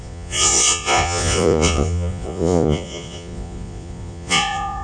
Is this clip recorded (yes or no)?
no